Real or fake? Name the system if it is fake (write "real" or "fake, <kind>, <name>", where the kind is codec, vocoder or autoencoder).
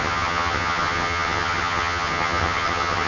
fake, vocoder, HiFi-GAN